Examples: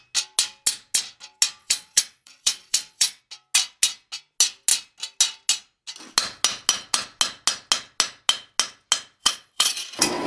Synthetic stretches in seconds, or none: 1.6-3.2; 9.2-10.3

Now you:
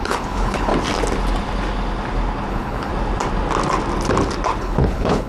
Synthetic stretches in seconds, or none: 0.0-0.7; 2.5-2.9; 4.6-5.3

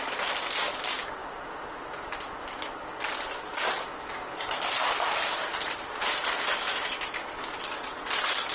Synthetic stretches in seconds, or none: 1.2-4.3

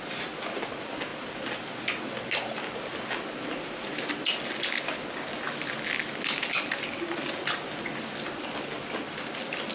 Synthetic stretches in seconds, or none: none

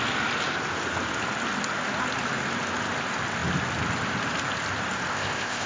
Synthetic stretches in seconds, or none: 5.1-5.7

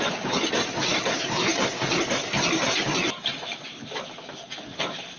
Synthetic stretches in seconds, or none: 0.9-4.0; 4.7-5.2

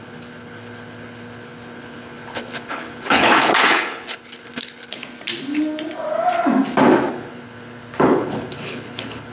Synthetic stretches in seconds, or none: 0.0-5.0; 7.1-9.3